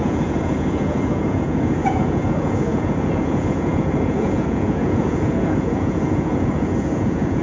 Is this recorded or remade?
remade